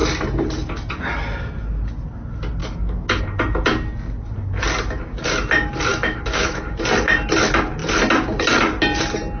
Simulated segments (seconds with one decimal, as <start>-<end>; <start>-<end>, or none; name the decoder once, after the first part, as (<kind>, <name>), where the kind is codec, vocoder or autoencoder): 2.6-3.2 (autoencoder, DAC-VAE); 5.9-6.6

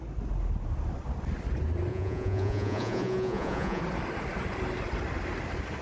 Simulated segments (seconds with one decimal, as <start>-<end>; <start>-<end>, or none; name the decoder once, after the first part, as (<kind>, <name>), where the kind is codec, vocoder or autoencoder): 1.9-3.8 (vocoder, Vocos)

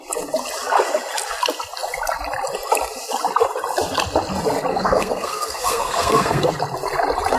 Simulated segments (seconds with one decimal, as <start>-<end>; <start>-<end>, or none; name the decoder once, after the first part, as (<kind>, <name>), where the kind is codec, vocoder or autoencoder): 4.7-6.5 (codec, SNAC)

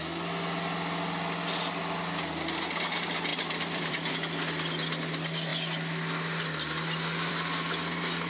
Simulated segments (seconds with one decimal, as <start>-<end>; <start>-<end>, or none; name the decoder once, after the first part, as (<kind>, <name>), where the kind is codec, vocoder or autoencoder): 3.3-4.1 (vocoder, BigVGAN v2)

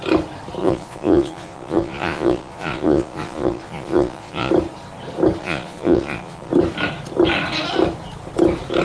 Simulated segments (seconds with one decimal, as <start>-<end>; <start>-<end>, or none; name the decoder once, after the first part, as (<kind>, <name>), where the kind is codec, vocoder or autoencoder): 0.6-4.5 (vocoder, Vocos); 5.4-6.5